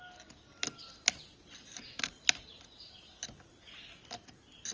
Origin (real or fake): real